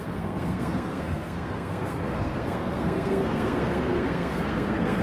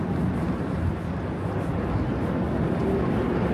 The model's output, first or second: first